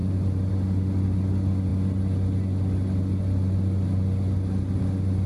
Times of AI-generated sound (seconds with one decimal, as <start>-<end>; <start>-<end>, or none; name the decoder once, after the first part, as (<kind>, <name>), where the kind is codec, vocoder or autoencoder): none